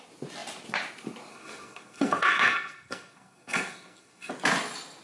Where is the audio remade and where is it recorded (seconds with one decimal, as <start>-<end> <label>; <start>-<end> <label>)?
0.0-1.3 recorded; 1.3-4.3 remade; 4.3-5.0 recorded